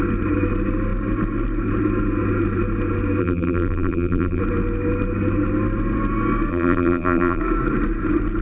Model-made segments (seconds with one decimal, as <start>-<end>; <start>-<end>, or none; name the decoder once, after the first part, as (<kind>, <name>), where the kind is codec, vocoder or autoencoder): 3.2-4.4 (vocoder, BigVGAN v2); 6.5-7.4